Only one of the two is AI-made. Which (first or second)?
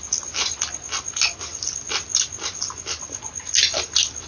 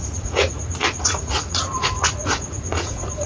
second